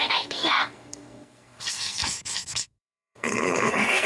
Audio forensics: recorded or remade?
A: remade